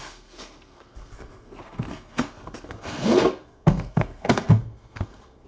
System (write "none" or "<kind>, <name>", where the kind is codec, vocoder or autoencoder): codec, SNAC